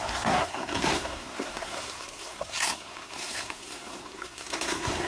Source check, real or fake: fake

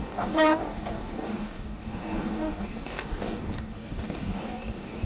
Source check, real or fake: fake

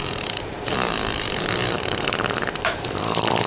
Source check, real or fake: fake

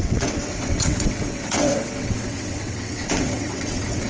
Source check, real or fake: fake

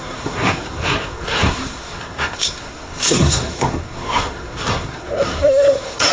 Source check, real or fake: fake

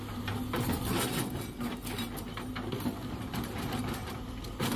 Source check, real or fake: real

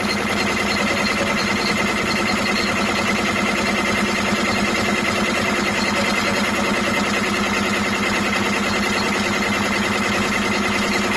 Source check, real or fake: real